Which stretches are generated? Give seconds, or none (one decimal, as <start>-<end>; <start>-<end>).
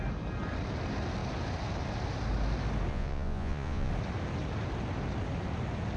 2.9-3.9